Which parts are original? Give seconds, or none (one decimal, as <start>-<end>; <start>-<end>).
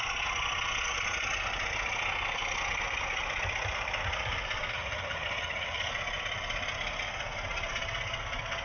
0.0-4.7; 5.9-8.6